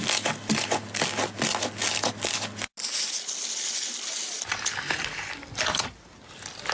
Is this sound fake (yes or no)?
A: no